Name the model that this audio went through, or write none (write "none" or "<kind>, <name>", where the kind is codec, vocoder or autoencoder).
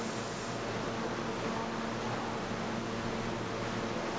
none